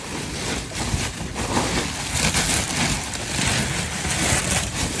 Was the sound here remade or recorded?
recorded